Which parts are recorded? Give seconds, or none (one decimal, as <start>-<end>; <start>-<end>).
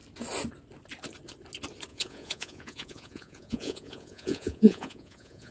0.0-1.9